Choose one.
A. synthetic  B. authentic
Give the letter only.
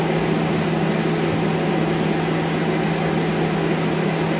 B